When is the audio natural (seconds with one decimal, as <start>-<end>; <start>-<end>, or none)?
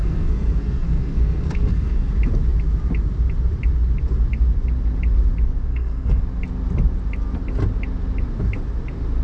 2.1-5.7; 6.2-9.2